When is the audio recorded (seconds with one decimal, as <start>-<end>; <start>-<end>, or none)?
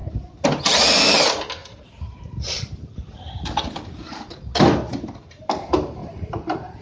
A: 0.0-1.6; 3.6-6.0